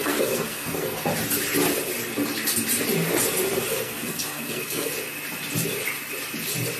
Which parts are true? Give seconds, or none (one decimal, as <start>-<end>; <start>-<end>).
1.1-3.7; 4.9-6.8